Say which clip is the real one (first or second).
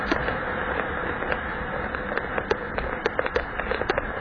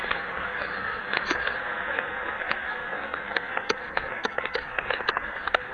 first